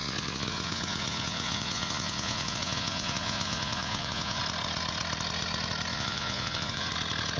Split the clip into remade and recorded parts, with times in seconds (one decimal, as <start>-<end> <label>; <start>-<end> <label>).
0.0-4.4 remade; 4.4-5.9 recorded; 5.9-6.9 remade; 6.9-7.4 recorded